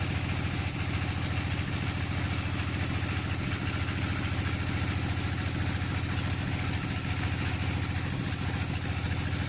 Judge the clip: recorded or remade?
recorded